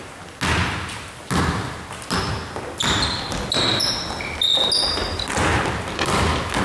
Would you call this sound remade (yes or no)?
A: no